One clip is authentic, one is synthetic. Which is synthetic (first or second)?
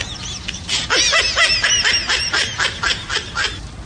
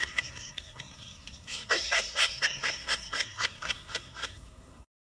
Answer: second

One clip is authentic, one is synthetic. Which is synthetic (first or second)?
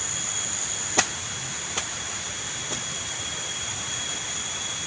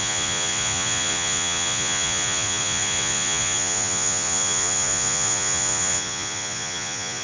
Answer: second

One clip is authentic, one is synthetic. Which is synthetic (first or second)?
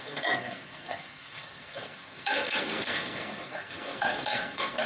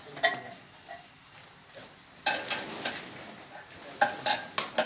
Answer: first